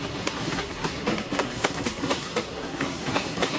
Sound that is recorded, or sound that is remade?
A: remade